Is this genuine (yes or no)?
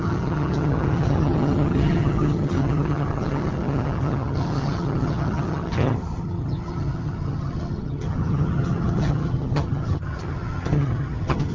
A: no